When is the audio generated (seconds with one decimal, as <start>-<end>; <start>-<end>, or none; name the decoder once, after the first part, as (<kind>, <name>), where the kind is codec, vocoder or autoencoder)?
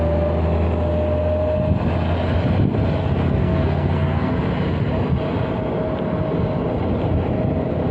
3.4-4.3 (codec, SNAC)